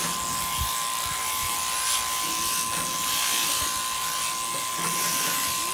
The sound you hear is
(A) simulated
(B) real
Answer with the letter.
B